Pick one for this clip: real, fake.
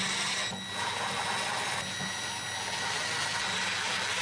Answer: real